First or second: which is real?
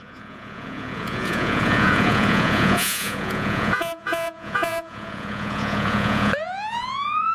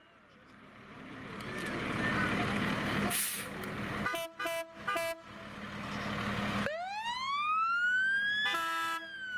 second